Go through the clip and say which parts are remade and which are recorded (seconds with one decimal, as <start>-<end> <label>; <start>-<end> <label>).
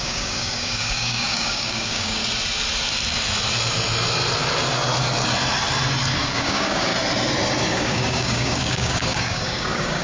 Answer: 0.0-2.2 remade; 2.2-6.2 recorded; 6.2-6.9 remade; 6.9-7.7 recorded; 7.7-10.0 remade